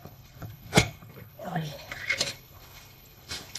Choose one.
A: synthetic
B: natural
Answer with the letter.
A